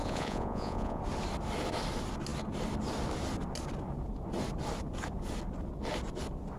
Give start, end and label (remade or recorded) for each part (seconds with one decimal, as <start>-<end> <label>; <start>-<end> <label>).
0.0-1.0 remade; 1.0-6.6 recorded